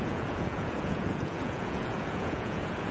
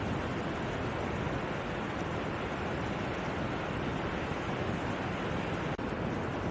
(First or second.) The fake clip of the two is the first